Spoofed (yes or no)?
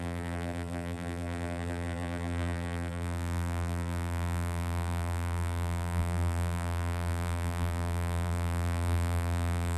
yes